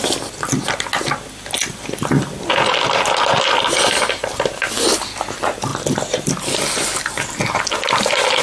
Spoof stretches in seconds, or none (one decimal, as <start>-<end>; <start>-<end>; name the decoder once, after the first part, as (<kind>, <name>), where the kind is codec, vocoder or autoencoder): none